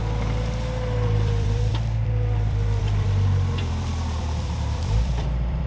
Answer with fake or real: fake